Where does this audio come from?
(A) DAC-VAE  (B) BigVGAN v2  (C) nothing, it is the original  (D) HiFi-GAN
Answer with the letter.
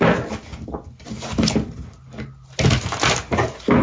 C